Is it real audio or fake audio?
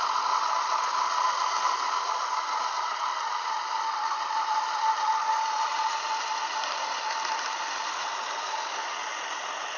real